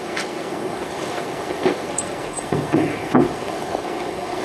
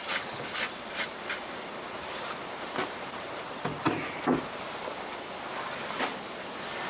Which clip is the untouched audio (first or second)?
second